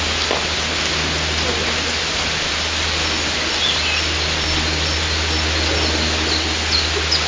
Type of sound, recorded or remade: recorded